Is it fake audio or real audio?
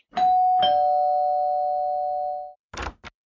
real